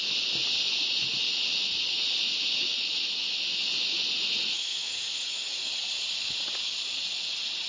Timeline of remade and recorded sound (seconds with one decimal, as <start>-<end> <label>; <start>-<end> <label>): 0.0-4.5 recorded; 4.5-5.7 remade; 5.7-7.7 recorded

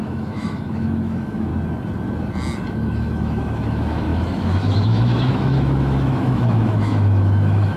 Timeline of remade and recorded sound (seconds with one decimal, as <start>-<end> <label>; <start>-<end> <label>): 0.0-1.5 remade; 1.5-2.7 recorded; 2.7-7.8 remade

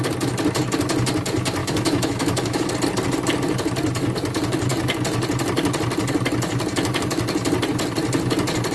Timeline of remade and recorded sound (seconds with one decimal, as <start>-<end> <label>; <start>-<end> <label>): 0.0-1.6 recorded; 1.6-2.7 remade; 2.7-8.7 recorded

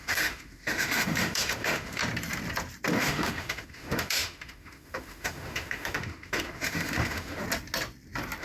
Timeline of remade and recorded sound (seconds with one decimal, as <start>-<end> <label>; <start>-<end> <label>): 0.0-2.0 remade; 2.0-3.0 recorded; 3.0-7.4 remade; 7.4-8.4 recorded

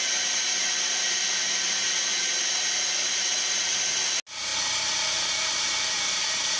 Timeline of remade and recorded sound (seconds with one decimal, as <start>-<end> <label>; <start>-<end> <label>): 0.0-6.6 recorded